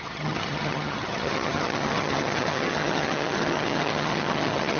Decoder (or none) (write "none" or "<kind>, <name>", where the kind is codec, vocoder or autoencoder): vocoder, HiFi-GAN